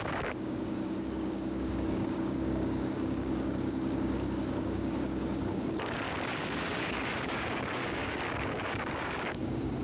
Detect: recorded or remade remade